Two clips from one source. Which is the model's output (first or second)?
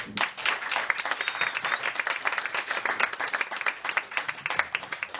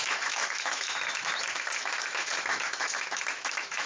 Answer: second